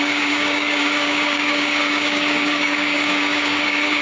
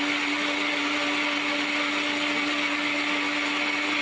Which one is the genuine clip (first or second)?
second